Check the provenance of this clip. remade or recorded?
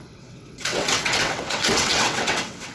remade